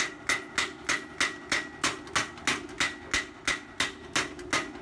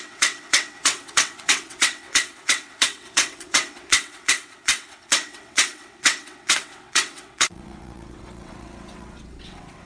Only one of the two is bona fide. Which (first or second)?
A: first